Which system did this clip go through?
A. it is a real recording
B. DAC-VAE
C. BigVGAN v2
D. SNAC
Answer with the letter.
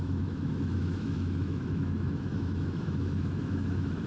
B